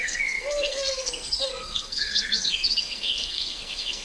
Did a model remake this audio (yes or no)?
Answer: yes